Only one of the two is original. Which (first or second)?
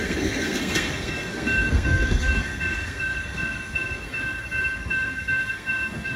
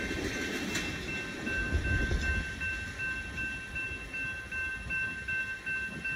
second